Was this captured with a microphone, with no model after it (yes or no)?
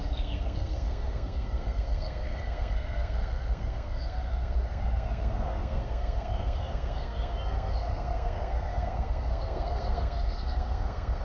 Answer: no